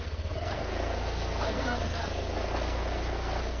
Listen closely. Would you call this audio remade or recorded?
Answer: remade